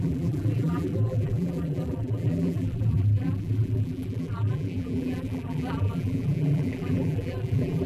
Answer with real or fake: fake